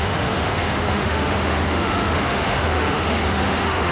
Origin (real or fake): fake